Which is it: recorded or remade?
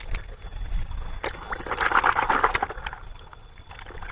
recorded